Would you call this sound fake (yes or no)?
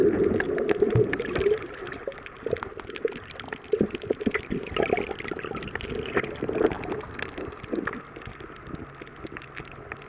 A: no